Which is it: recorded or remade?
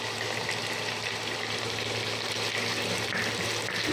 recorded